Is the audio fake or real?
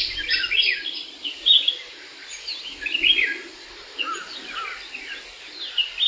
real